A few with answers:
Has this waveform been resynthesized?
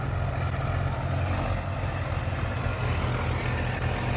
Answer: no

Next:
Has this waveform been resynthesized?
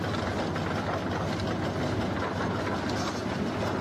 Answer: no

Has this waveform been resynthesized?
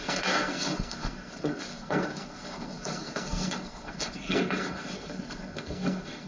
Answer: yes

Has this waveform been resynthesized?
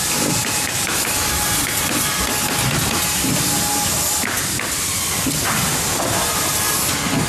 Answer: no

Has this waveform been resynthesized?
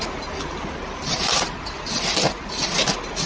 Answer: no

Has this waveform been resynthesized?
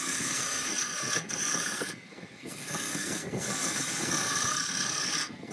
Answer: yes